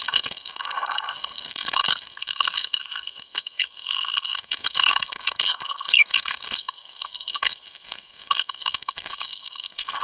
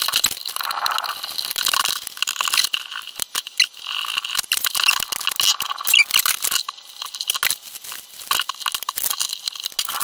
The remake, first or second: first